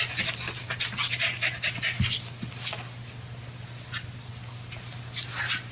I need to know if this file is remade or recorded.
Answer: recorded